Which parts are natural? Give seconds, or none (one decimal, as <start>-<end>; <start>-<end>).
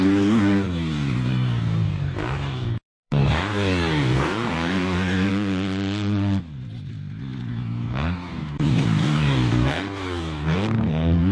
5.3-7.5